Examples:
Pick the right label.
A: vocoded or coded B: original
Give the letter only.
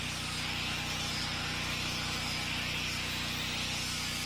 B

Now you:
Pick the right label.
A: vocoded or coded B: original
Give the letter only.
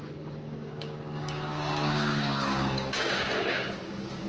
A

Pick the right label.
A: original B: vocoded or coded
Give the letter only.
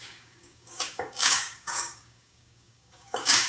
B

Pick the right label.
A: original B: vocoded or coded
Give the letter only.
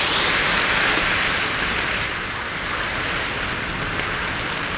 A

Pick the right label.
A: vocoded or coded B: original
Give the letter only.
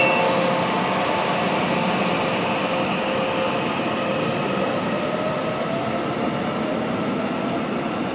B